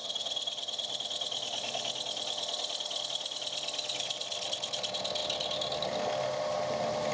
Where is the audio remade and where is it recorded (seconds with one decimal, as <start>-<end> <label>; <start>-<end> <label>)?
0.0-7.1 recorded